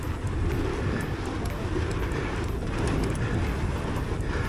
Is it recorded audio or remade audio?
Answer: recorded